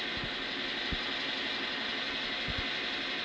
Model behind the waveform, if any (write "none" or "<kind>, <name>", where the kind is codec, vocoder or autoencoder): none